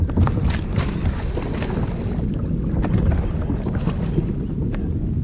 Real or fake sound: real